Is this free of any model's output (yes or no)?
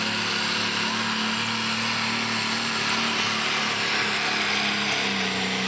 yes